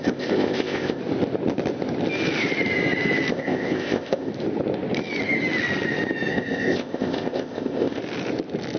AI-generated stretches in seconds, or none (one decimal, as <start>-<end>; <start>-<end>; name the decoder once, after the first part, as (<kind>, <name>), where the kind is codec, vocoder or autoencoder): 0.0-1.0 (codec, ZipCodec); 3.3-4.3; 6.3-8.0